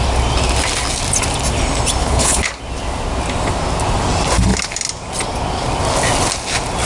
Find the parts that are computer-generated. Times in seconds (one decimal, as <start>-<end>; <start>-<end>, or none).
2.0-2.6